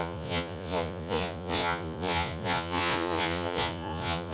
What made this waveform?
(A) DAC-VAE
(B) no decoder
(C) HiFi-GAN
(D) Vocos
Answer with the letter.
D